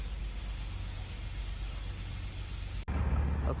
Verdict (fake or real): real